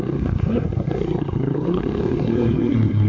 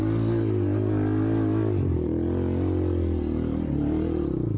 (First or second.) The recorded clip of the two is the second